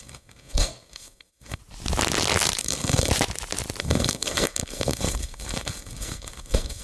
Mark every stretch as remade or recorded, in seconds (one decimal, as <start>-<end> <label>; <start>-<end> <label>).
0.0-1.6 remade; 1.6-2.6 recorded; 2.6-3.1 remade; 3.1-3.8 recorded; 3.8-6.8 remade